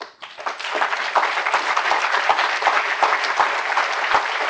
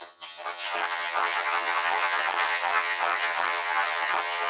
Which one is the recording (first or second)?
first